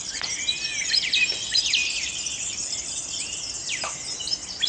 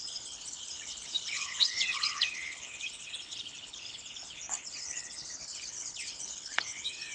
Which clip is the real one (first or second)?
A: first